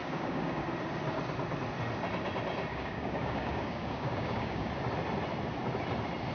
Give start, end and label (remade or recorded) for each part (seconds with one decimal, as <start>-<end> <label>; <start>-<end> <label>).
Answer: 0.0-0.7 remade; 0.7-2.7 recorded; 2.7-4.7 remade; 4.7-6.3 recorded